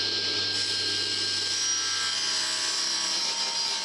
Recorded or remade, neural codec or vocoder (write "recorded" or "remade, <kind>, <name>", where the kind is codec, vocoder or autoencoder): remade, vocoder, BigVGAN v2